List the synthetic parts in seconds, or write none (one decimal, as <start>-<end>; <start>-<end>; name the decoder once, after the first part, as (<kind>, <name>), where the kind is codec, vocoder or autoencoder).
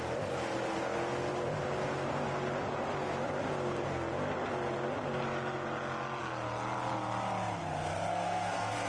8.1-8.9 (codec, SNAC)